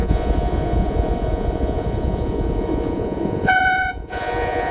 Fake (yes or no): yes